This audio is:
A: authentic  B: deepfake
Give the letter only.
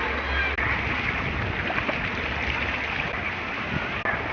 A